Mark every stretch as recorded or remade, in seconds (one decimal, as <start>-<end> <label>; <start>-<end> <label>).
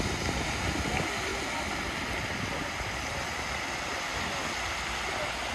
0.0-5.5 recorded